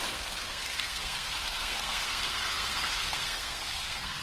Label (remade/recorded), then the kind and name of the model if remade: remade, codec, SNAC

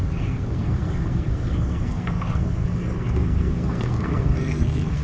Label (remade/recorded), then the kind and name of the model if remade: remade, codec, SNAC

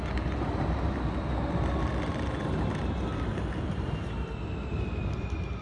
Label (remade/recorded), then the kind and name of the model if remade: recorded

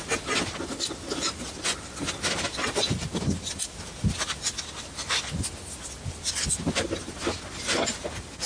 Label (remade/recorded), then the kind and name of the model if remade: recorded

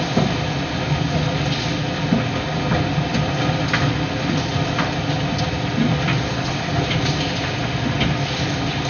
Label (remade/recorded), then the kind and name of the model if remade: recorded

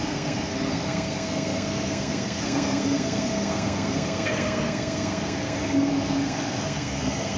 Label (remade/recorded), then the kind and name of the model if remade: remade, codec, SNAC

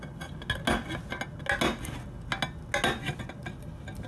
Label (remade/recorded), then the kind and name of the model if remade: recorded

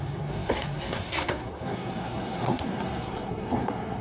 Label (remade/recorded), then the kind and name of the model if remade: remade, codec, SNAC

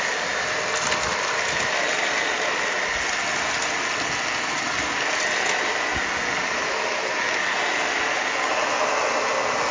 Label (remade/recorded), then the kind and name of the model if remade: recorded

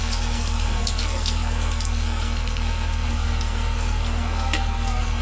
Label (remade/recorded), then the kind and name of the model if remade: remade, codec, SNAC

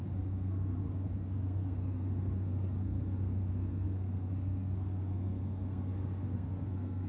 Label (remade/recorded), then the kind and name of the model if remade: remade, codec, SNAC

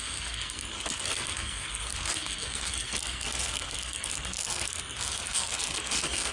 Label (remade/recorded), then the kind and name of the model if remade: remade, codec, SNAC